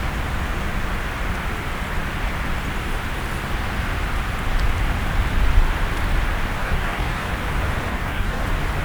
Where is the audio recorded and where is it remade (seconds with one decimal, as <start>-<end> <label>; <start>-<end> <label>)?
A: 0.0-6.6 recorded; 6.6-7.3 remade; 7.3-7.9 recorded; 7.9-8.4 remade; 8.4-8.8 recorded